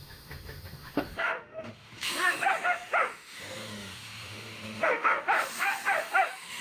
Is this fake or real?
fake